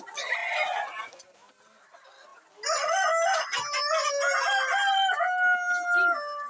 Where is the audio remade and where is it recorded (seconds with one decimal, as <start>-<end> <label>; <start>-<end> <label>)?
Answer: 0.0-6.5 recorded